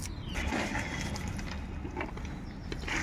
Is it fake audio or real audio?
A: real